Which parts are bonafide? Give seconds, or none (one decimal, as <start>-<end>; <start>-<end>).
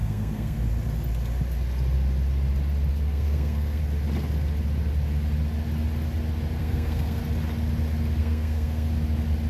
0.6-2.9; 3.8-6.6; 7.2-8.2; 8.9-9.5